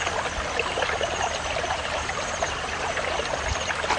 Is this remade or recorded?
recorded